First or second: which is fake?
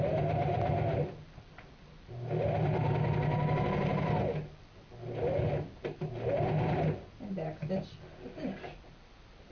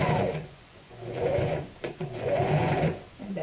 second